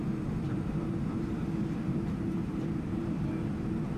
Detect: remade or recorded remade